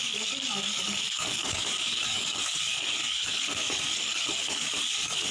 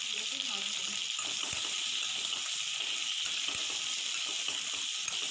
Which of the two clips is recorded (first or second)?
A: second